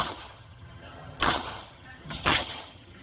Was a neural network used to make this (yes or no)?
yes